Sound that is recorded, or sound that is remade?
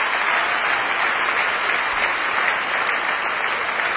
recorded